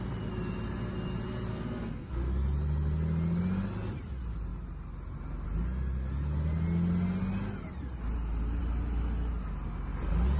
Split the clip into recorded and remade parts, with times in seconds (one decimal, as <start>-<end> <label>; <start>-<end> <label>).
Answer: 0.0-1.5 recorded; 1.5-2.1 remade; 2.1-10.4 recorded